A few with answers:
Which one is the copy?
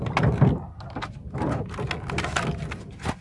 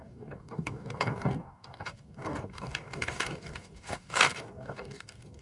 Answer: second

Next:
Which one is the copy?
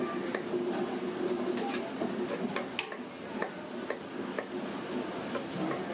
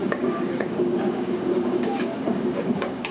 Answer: second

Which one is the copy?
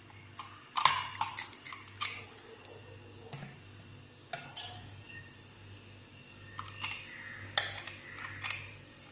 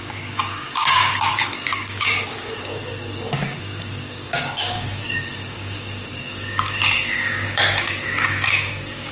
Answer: second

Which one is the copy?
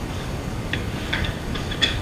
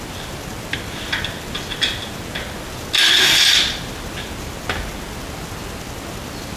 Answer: first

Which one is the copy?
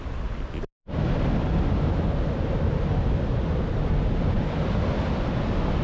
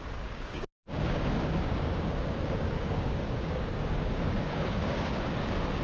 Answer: second